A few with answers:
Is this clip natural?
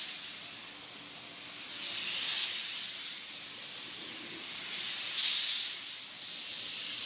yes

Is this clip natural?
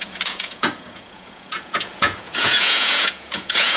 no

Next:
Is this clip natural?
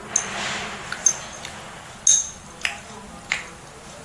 yes